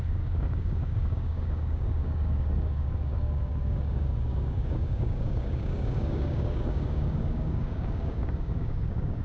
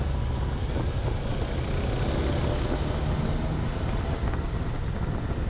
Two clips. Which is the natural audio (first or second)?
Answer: second